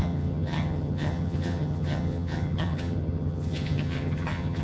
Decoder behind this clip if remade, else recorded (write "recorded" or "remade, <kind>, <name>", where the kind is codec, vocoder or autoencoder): remade, vocoder, HiFi-GAN